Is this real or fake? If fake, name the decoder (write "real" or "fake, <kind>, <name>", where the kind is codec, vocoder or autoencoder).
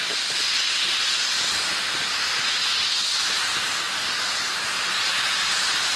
real